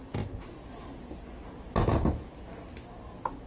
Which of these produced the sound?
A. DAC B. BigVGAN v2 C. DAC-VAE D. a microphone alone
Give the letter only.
D